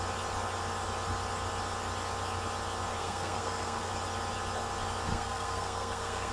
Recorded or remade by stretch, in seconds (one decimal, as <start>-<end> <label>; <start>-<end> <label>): 0.0-3.0 recorded; 3.0-3.9 remade; 3.9-5.1 recorded; 5.1-6.3 remade